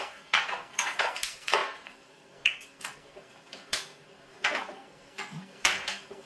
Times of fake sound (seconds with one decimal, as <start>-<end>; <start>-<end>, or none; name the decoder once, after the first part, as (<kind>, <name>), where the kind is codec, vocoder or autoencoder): 0.0-6.3 (codec, SNAC)